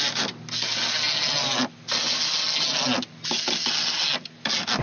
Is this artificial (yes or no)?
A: no